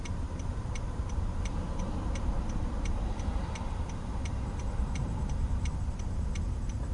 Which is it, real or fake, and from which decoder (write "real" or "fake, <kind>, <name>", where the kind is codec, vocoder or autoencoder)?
fake, vocoder, BigVGAN v2